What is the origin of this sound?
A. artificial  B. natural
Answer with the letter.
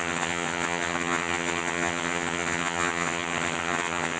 A